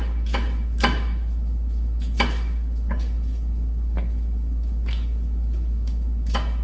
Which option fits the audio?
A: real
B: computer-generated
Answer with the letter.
B